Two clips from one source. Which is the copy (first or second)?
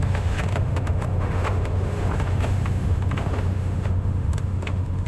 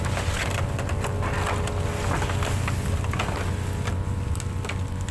first